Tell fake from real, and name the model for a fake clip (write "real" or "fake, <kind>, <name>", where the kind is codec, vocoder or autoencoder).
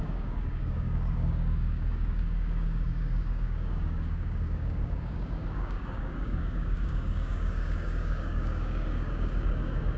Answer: fake, codec, DAC